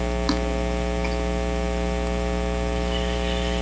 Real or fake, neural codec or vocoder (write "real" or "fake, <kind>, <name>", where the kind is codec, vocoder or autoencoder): real